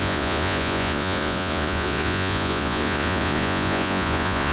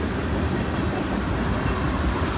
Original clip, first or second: second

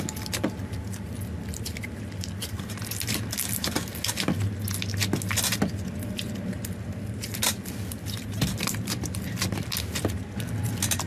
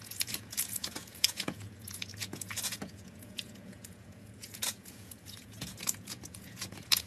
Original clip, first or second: first